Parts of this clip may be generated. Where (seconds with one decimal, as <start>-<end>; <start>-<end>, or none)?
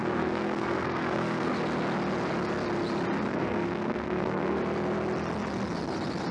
0.0-1.5; 3.3-4.6